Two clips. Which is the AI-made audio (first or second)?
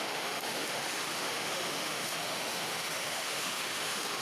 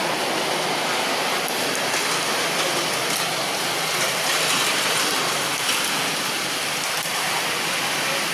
first